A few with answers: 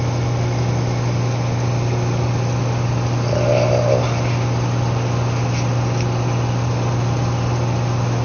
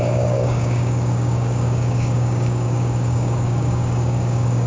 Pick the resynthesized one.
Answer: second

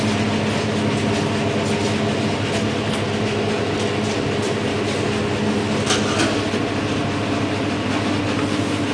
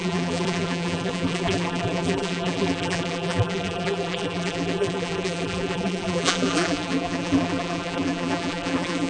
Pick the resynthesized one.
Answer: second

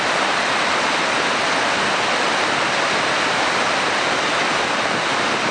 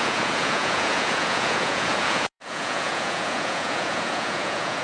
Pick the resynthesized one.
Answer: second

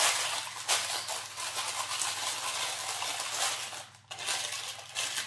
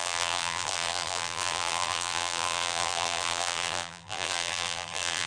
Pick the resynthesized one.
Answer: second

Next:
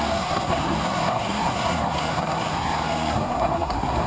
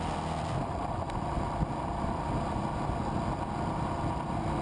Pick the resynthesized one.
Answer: first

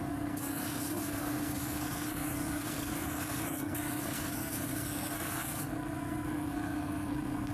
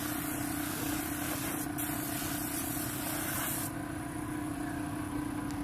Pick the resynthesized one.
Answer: first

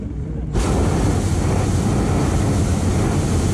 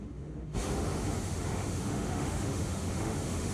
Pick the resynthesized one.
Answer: second